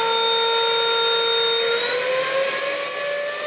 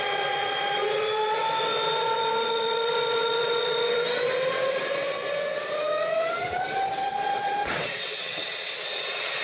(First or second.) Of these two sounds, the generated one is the second